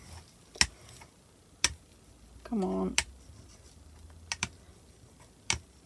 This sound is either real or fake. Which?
real